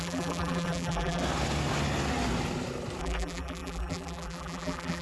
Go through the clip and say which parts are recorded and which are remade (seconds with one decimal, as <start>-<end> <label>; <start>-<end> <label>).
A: 0.0-1.2 remade; 1.2-3.0 recorded; 3.0-5.0 remade